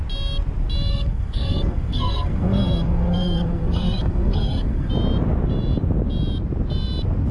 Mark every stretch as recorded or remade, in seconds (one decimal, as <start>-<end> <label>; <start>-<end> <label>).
0.0-0.9 recorded; 0.9-4.9 remade; 4.9-7.3 recorded